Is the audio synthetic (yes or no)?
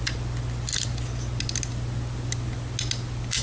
no